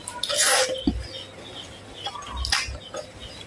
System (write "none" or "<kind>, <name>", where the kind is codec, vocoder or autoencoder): none